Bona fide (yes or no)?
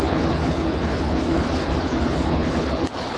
no